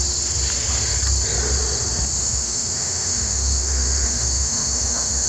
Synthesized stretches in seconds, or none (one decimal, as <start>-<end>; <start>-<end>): 2.2-5.3